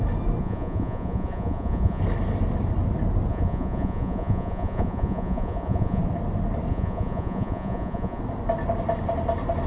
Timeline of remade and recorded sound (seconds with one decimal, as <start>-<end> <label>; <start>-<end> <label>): 0.0-0.4 recorded; 0.4-2.0 remade; 2.0-3.3 recorded; 3.3-6.0 remade; 6.0-6.7 recorded; 6.7-8.2 remade; 8.2-9.7 recorded